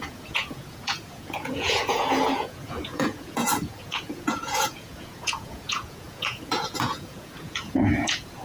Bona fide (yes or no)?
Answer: no